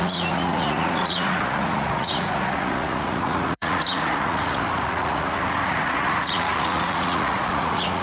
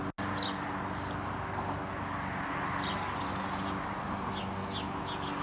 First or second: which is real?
second